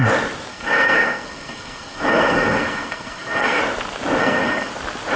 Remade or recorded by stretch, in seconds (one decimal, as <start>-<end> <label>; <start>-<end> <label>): 0.0-0.5 recorded; 0.5-3.6 remade; 3.6-4.2 recorded; 4.2-4.7 remade; 4.7-5.2 recorded